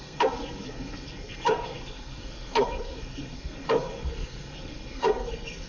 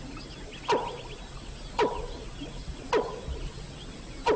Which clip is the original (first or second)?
second